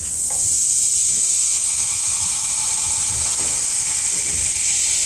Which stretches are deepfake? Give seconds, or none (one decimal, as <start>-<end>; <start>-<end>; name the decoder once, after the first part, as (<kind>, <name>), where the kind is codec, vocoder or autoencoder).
1.0-2.5 (autoencoder, DAC-VAE)